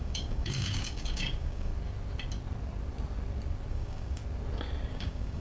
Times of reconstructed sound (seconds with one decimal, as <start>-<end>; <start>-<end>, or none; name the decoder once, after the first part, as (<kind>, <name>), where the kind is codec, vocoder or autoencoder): 0.0-1.7 (codec, DAC); 3.7-4.2; 4.9-5.4